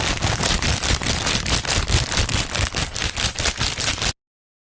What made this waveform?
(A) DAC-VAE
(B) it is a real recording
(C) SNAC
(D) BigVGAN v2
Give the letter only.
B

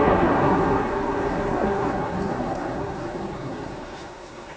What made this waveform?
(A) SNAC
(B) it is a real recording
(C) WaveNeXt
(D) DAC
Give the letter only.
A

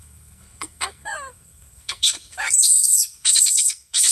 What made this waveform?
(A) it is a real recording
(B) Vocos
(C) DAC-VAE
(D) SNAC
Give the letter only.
D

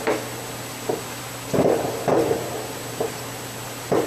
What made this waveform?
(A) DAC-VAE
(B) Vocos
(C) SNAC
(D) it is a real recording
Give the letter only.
D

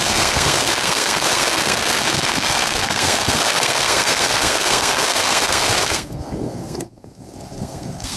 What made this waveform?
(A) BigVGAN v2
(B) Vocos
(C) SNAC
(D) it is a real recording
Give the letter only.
C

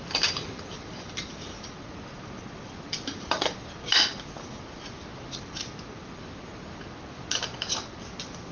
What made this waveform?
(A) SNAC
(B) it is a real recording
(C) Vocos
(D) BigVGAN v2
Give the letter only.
B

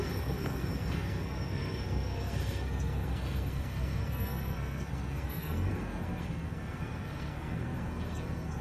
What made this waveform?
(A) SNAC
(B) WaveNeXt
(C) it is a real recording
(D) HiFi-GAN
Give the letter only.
A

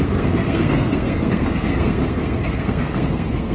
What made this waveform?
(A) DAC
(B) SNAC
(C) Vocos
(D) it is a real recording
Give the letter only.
B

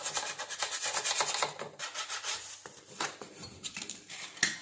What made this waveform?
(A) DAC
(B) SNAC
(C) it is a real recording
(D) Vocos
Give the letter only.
C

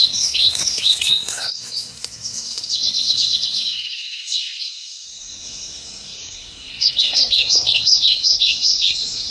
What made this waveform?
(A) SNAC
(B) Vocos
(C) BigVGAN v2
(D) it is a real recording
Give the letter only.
A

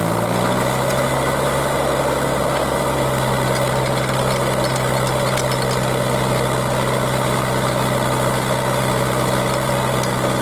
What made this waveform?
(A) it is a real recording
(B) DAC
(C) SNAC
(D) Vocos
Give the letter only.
A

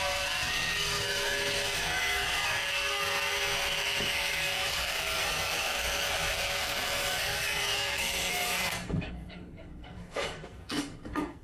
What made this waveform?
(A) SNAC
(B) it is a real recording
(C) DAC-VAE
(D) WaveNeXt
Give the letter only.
A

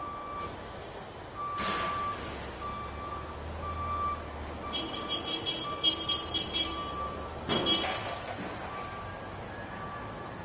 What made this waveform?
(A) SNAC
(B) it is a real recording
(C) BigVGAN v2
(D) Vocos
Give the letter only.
B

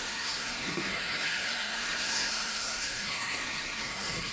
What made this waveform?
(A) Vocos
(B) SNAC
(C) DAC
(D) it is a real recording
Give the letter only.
B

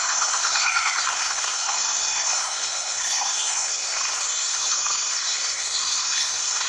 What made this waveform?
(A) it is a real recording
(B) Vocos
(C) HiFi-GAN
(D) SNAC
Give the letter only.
D